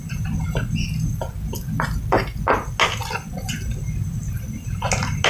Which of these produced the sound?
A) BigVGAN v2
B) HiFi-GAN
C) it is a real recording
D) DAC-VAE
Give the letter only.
C